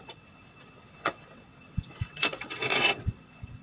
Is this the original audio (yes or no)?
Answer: no